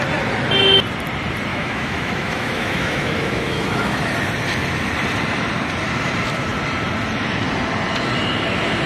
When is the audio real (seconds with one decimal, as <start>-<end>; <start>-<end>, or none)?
0.0-1.5; 4.0-8.9